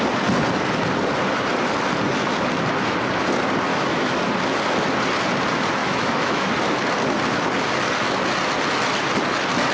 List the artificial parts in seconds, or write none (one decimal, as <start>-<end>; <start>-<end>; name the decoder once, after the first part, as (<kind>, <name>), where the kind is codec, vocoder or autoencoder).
3.7-4.2 (autoencoder, DAC-VAE); 5.8-6.5